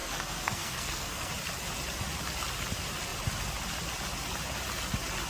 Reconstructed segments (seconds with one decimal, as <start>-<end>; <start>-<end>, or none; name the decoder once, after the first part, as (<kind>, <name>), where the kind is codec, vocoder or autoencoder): 0.0-1.3 (codec, SNAC)